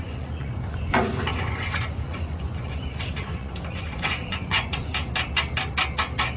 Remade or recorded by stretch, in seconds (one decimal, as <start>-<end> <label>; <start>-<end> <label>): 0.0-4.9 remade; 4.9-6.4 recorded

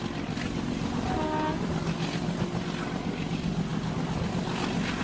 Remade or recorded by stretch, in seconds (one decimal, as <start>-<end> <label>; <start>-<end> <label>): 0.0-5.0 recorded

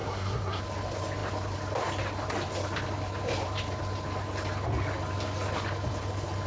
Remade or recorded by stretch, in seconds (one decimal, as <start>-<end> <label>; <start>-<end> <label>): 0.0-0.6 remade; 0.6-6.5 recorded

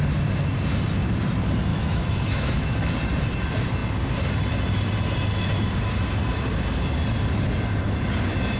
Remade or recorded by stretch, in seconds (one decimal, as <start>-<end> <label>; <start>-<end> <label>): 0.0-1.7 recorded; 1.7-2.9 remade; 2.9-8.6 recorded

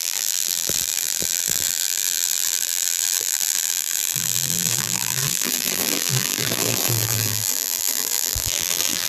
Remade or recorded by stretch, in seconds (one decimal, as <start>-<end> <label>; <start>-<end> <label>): 0.0-9.1 remade

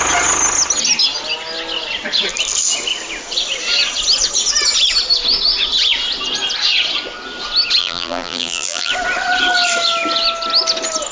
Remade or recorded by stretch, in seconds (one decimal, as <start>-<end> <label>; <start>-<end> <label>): 0.0-7.8 recorded; 7.8-8.9 remade; 8.9-11.1 recorded

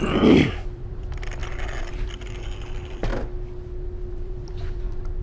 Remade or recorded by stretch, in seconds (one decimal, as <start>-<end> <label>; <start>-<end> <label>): 0.0-3.1 remade; 3.1-4.1 recorded; 4.1-5.2 remade